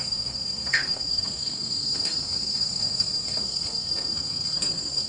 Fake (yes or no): yes